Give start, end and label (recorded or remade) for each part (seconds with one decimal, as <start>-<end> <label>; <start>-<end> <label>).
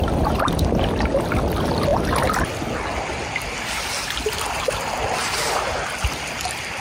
0.0-6.8 recorded